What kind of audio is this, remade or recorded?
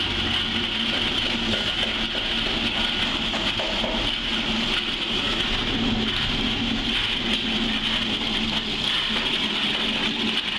recorded